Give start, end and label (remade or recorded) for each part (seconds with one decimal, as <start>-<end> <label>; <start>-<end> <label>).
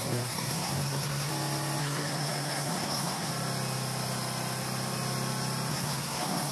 0.0-1.3 remade; 1.3-1.8 recorded; 1.8-3.3 remade; 3.3-5.7 recorded; 5.7-6.5 remade